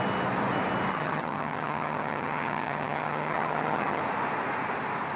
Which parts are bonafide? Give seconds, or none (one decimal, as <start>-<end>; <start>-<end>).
0.0-0.9; 4.0-5.2